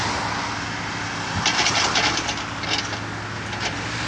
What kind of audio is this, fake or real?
real